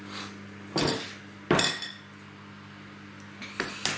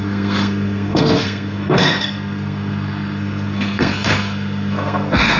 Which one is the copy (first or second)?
second